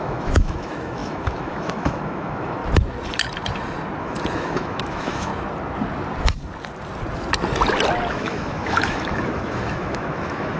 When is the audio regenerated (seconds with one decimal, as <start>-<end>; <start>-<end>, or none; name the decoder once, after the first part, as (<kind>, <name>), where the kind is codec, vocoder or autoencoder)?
0.0-2.6 (autoencoder, DAC-VAE); 4.0-5.3; 8.1-10.6